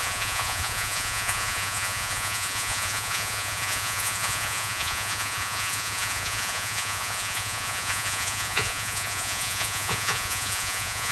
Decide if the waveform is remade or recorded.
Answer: remade